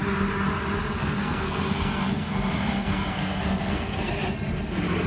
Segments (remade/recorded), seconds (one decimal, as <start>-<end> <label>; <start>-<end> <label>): 0.0-1.0 recorded; 1.0-4.1 remade; 4.1-5.1 recorded